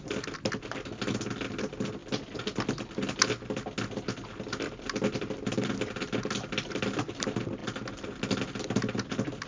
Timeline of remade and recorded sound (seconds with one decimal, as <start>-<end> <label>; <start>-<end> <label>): 0.0-9.5 recorded